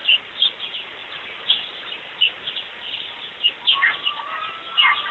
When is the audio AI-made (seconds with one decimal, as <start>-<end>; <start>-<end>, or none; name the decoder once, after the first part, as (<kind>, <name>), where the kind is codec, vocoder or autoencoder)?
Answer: none